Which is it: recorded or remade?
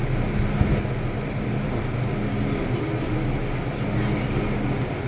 recorded